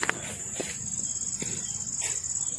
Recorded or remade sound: recorded